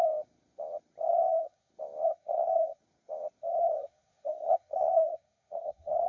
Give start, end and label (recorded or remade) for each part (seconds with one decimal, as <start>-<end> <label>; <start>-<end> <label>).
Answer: 0.0-1.1 recorded; 1.1-1.7 remade; 1.7-2.1 recorded; 2.1-2.8 remade; 2.8-3.4 recorded; 3.4-6.1 remade